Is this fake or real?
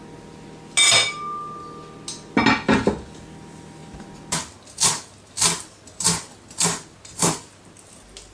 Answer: real